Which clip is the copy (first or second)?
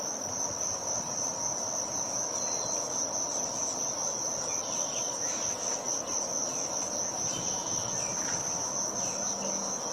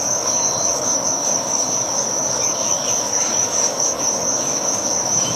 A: second